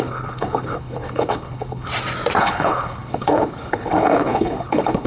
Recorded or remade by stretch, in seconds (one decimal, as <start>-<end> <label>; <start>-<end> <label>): 0.0-1.9 remade; 1.9-2.4 recorded; 2.4-5.1 remade